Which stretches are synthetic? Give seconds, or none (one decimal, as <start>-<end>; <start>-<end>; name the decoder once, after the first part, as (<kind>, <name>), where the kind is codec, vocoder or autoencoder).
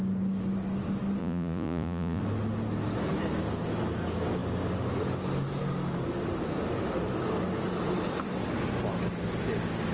1.2-2.2 (vocoder, Vocos)